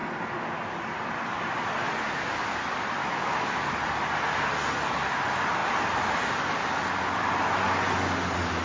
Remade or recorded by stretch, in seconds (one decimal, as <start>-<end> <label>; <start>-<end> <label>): 0.0-3.0 recorded; 3.0-3.7 remade; 3.7-8.6 recorded